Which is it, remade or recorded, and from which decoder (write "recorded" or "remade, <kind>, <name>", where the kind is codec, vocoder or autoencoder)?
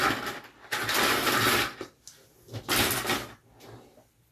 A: recorded